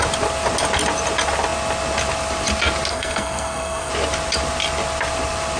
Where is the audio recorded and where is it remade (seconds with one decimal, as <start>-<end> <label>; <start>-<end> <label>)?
0.0-2.9 recorded; 2.9-3.9 remade; 3.9-5.6 recorded